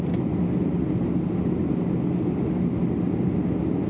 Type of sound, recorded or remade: recorded